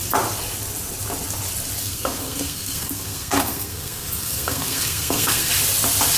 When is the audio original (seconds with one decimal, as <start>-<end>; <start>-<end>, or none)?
0.0-1.8; 5.5-6.2